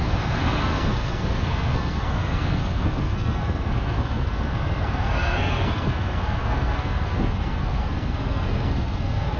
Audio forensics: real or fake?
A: fake